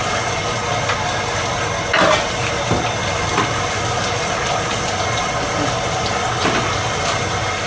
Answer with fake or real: real